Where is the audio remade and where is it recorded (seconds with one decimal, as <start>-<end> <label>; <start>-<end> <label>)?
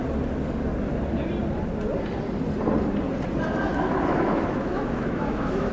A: 0.0-3.7 recorded; 3.7-5.7 remade